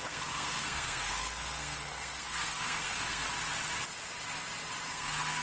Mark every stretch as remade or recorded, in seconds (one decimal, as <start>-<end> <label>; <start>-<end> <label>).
0.0-3.2 remade; 3.2-4.9 recorded; 4.9-5.4 remade